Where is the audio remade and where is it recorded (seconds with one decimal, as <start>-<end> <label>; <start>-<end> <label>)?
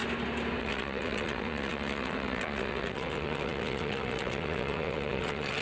0.0-0.6 recorded; 0.6-5.6 remade